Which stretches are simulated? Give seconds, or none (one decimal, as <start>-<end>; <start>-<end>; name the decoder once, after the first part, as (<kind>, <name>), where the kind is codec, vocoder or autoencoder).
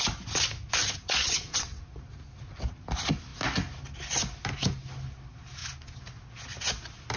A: 0.8-1.8 (vocoder, WaveNeXt)